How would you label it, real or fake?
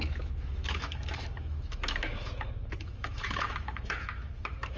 fake